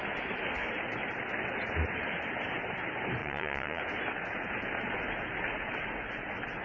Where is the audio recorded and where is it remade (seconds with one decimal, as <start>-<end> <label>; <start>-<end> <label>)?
0.0-3.2 recorded; 3.2-3.8 remade; 3.8-6.6 recorded

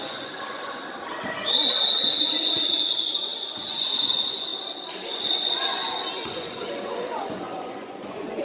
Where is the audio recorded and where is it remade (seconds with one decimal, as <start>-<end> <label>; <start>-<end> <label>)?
0.0-0.8 remade; 0.8-2.0 recorded; 2.0-4.5 remade; 4.5-5.1 recorded; 5.1-8.4 remade

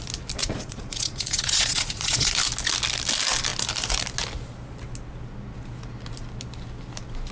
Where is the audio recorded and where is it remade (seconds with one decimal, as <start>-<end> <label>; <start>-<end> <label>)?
0.0-0.4 recorded; 0.4-2.3 remade; 2.3-7.3 recorded

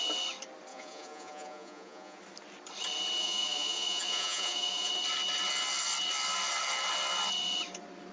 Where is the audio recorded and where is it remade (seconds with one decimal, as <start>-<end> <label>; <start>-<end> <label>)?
0.0-0.7 recorded; 0.7-2.2 remade; 2.2-3.2 recorded; 3.2-4.9 remade; 4.9-8.1 recorded

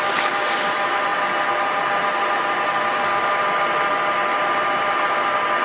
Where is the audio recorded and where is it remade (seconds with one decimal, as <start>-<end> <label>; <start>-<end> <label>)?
0.0-5.6 recorded

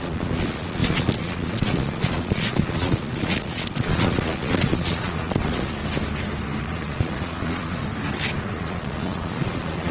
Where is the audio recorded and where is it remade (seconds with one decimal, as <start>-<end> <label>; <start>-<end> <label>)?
0.0-5.8 remade; 5.8-6.6 recorded; 6.6-7.8 remade; 7.8-8.4 recorded; 8.4-9.9 remade